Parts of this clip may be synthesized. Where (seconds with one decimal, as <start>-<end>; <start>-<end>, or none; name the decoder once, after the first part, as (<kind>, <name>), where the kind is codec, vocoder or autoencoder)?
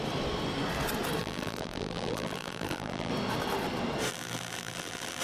1.2-3.1 (vocoder, BigVGAN v2); 4.1-5.2